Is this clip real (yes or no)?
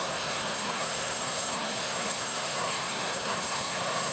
no